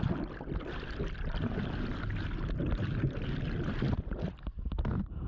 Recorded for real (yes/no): yes